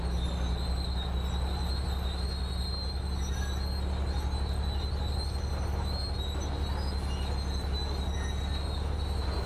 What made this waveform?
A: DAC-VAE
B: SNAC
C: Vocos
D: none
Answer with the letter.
D